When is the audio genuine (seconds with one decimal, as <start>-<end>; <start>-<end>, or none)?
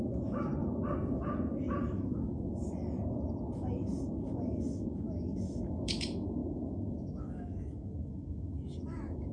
0.5-1.9; 2.6-4.1